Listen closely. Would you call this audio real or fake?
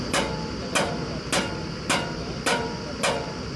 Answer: real